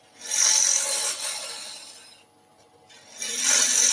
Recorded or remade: recorded